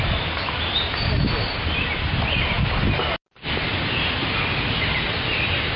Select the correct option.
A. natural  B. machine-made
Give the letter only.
A